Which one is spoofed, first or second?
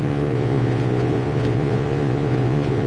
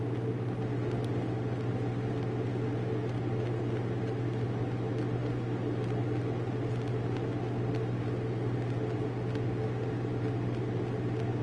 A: first